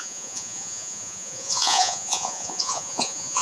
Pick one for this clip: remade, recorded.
remade